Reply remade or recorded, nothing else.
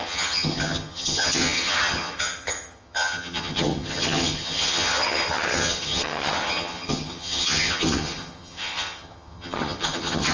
remade